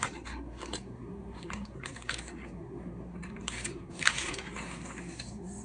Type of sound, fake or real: fake